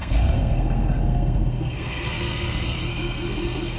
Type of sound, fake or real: fake